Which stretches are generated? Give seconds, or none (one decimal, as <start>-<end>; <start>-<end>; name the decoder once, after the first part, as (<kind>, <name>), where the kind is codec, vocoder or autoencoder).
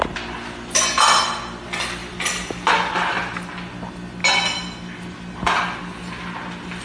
2.0-2.7 (vocoder, BigVGAN v2)